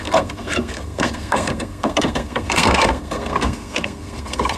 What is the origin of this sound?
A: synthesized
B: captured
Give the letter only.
A